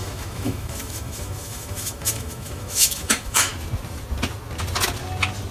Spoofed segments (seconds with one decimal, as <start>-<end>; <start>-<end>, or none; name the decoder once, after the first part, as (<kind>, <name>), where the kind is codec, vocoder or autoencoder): 0.0-3.5 (autoencoder, DAC-VAE)